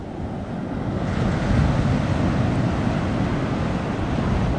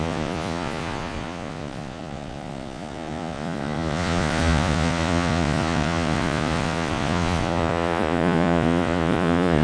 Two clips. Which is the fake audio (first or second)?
second